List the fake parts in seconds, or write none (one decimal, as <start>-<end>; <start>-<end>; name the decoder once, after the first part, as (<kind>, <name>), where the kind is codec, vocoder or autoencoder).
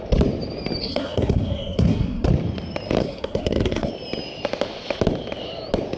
0.8-2.3 (codec, SNAC); 3.0-3.9